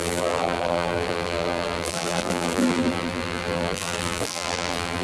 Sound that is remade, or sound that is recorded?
remade